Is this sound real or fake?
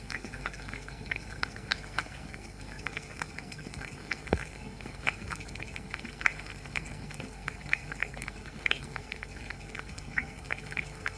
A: fake